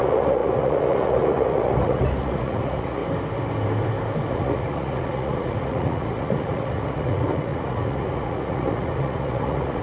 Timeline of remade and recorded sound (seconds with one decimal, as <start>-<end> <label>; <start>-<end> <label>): 0.0-3.0 remade; 3.0-4.3 recorded; 4.3-9.8 remade